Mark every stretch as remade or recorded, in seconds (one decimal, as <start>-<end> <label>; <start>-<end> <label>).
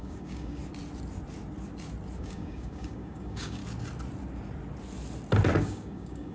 0.0-0.6 remade; 0.6-2.2 recorded; 2.2-3.6 remade; 3.6-5.6 recorded; 5.6-6.3 remade